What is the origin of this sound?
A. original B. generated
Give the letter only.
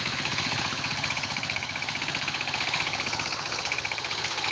B